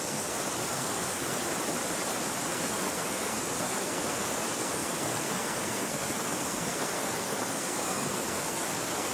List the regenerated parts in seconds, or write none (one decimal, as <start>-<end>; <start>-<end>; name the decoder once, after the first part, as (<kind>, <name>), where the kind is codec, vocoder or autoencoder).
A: 0.0-1.4 (codec, SNAC); 2.5-9.1